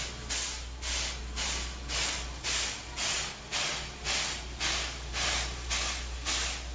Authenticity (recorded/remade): recorded